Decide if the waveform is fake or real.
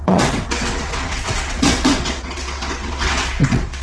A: fake